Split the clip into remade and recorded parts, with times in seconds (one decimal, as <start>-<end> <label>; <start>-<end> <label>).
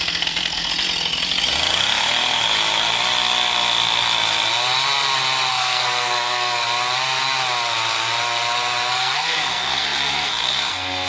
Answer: 0.0-0.7 remade; 0.7-5.5 recorded; 5.5-6.6 remade; 6.6-8.9 recorded; 8.9-11.1 remade